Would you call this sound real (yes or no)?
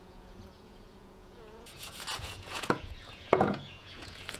no